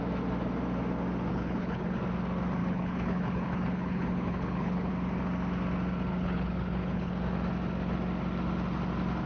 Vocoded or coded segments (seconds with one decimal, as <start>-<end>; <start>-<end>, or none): 1.3-2.0; 2.6-4.9; 6.1-7.1